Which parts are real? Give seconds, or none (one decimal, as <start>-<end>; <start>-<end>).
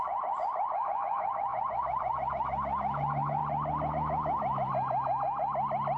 3.4-3.9; 4.7-6.0